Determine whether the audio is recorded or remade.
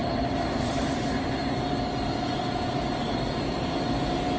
recorded